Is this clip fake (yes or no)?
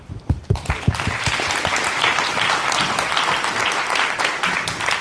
yes